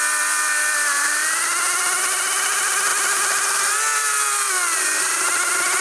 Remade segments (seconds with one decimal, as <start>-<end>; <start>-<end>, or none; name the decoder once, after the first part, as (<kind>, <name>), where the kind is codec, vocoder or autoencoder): 0.0-1.2 (vocoder, BigVGAN v2); 2.0-5.8